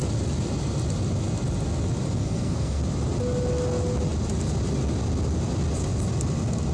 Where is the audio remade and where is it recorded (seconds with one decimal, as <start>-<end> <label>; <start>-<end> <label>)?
0.0-2.2 recorded; 2.2-2.8 remade; 2.8-6.7 recorded